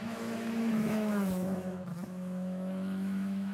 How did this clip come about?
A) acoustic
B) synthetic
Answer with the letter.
B